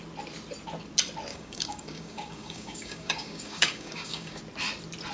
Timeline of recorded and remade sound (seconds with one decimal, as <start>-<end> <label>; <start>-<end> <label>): 0.0-1.3 recorded; 1.3-4.4 remade; 4.4-5.1 recorded